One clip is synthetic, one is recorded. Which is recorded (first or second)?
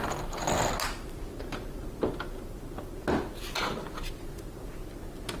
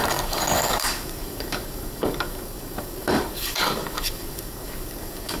first